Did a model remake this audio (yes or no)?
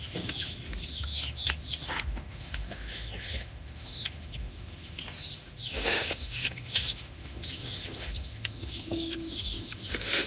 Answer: yes